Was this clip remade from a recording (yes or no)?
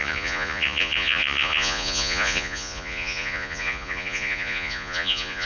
yes